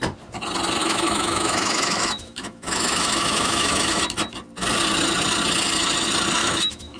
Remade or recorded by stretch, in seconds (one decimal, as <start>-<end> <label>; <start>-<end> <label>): 0.0-0.8 recorded; 0.8-4.0 remade; 4.0-6.4 recorded; 6.4-7.0 remade